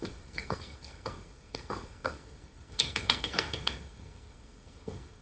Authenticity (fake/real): fake